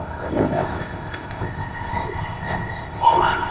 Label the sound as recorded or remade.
remade